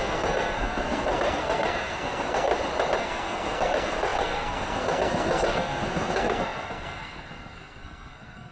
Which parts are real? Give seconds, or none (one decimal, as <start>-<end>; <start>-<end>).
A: 2.5-3.0